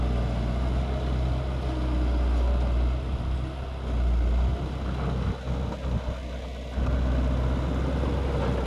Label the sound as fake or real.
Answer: real